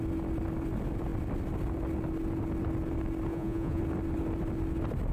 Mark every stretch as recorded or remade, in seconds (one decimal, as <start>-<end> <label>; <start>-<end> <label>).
0.0-3.3 recorded; 3.3-3.8 remade; 3.8-5.1 recorded